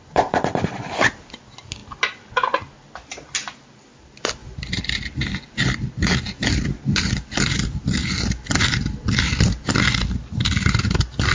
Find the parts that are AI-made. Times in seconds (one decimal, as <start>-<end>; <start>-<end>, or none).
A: 4.4-7.5; 8.0-9.2